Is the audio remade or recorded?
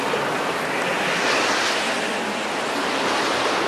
recorded